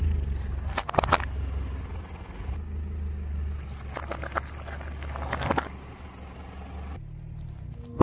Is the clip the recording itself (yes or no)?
yes